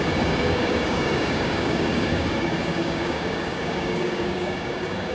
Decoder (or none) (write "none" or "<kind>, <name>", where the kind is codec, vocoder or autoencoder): codec, DAC